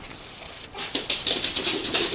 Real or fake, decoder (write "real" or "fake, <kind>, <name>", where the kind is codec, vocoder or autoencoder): real